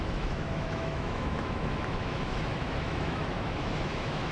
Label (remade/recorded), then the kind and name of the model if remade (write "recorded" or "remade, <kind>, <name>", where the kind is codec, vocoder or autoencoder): remade, autoencoder, DAC-VAE